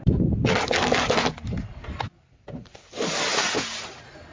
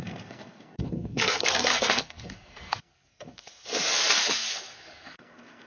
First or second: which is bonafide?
first